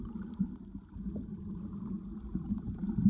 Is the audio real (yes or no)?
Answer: yes